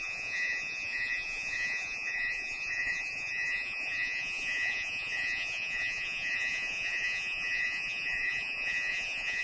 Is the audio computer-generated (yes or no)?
yes